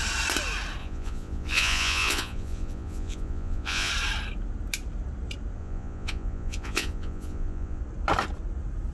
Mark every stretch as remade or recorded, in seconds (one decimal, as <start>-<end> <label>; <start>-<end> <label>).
0.0-0.8 recorded; 0.8-3.9 remade; 3.9-5.6 recorded; 5.6-7.8 remade; 7.8-8.9 recorded